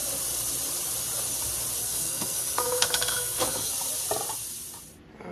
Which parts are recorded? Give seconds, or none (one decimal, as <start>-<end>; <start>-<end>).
0.0-1.8; 3.7-5.3